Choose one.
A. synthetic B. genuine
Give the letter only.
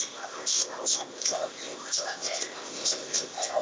A